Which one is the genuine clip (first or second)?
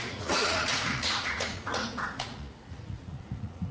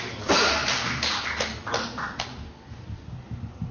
second